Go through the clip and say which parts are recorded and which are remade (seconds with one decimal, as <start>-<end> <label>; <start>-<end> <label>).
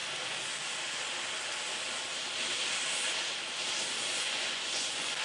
0.0-4.1 recorded; 4.1-5.2 remade